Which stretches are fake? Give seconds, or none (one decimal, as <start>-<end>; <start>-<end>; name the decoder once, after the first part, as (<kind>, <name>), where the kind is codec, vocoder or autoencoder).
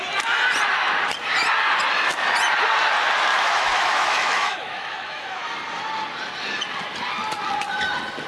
3.3-5.4 (autoencoder, DAC-VAE)